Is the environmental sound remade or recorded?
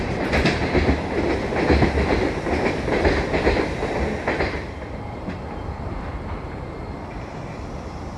remade